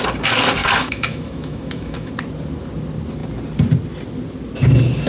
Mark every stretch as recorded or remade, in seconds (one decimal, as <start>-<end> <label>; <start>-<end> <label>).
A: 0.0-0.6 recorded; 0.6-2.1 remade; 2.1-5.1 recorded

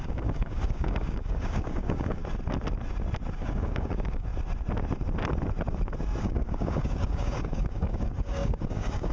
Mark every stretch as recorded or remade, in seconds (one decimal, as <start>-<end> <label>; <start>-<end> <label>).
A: 0.0-2.2 remade; 2.2-3.3 recorded; 3.3-4.3 remade; 4.3-6.2 recorded; 6.2-9.1 remade

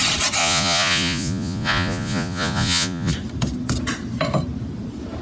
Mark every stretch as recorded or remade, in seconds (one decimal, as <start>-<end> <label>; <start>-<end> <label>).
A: 0.0-0.4 recorded; 0.4-3.1 remade; 3.1-5.2 recorded

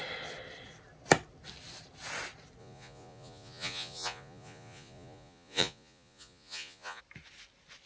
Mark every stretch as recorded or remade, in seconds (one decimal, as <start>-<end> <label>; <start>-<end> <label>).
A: 0.0-2.6 recorded; 2.6-7.0 remade; 7.0-7.9 recorded

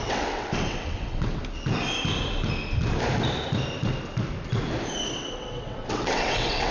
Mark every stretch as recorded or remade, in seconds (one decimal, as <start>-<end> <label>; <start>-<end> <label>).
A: 0.0-1.4 remade; 1.4-5.1 recorded; 5.1-6.7 remade

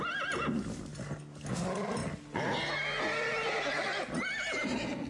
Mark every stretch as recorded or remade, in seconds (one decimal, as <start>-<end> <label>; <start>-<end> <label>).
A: 0.0-5.1 recorded